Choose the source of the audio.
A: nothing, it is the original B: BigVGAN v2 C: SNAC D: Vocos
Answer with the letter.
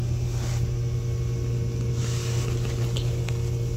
A